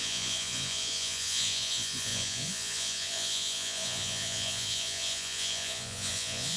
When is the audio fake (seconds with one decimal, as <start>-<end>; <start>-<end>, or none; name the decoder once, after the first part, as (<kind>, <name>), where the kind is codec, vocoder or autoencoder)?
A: 0.0-6.6 (vocoder, Vocos)

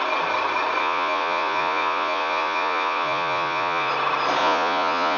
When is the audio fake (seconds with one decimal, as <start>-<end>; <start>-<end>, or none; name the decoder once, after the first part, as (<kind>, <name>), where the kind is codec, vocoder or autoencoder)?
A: 0.8-3.9 (vocoder, Vocos); 4.4-5.2

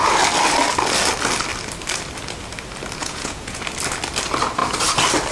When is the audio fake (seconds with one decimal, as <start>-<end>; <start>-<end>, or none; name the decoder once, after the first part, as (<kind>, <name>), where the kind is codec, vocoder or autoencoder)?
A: 3.0-3.6 (vocoder, Vocos)

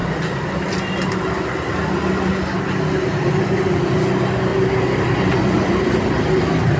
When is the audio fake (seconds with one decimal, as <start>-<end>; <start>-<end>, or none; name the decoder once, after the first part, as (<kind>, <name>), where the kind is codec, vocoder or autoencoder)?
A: none